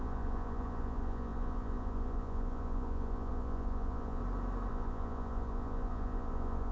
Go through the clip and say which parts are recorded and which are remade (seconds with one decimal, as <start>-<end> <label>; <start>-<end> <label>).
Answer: 0.0-4.2 remade; 4.2-4.7 recorded; 4.7-6.7 remade